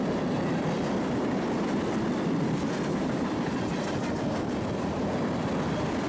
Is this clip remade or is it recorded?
recorded